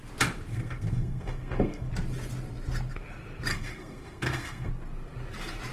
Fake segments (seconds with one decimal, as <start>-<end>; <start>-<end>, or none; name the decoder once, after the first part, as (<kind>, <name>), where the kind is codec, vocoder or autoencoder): 0.5-1.9 (codec, SNAC); 3.5-4.7